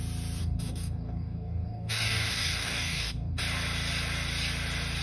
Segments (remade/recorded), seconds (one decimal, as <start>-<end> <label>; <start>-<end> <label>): 0.0-0.4 recorded; 0.4-3.4 remade; 3.4-5.0 recorded